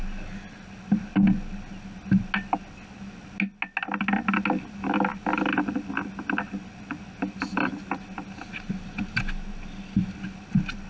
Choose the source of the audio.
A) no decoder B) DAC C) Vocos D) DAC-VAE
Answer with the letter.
A